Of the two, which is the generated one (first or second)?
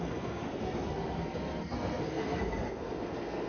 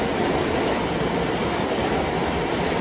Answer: first